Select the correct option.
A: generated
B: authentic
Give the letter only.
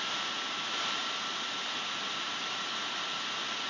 A